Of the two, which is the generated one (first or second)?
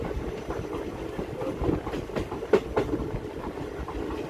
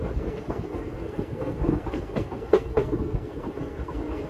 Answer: second